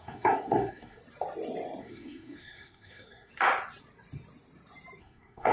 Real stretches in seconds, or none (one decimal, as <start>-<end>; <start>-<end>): 1.0-1.8; 3.3-5.0